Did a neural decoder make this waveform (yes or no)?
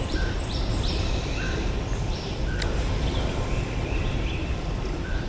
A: yes